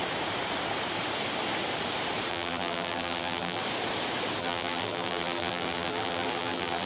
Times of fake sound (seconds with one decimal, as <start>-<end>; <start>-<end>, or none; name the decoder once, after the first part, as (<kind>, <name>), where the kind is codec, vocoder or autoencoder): 2.3-3.6 (vocoder, BigVGAN v2); 4.4-6.9